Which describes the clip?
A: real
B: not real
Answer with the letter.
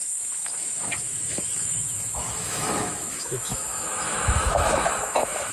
B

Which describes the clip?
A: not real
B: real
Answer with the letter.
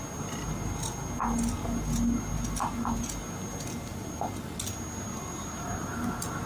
B